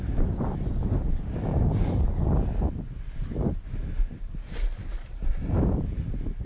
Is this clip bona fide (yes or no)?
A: yes